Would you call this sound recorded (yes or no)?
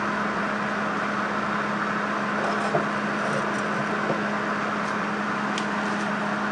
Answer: yes